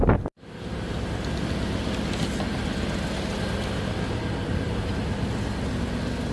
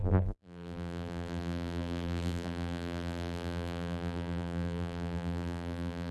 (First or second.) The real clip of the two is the first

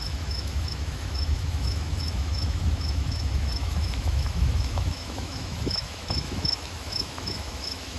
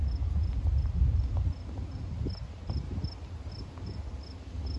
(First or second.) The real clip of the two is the second